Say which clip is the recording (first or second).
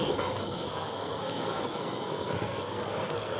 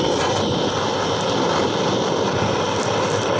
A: second